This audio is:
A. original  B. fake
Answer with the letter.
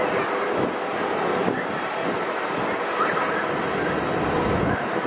A